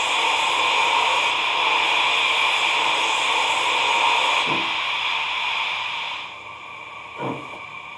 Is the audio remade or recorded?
recorded